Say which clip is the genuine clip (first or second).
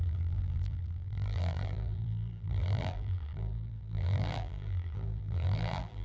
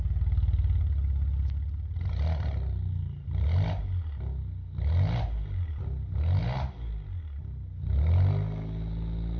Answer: second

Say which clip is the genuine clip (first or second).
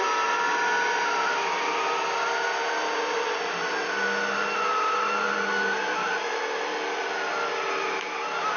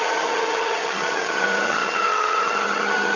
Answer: first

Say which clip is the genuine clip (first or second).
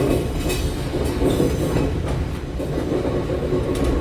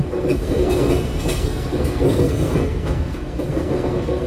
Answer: first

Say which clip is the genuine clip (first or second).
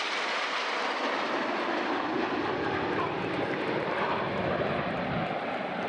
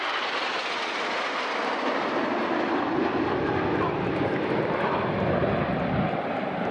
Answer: second